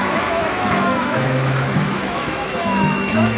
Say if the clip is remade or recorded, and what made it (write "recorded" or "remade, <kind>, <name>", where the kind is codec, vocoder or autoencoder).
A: remade, autoencoder, DAC-VAE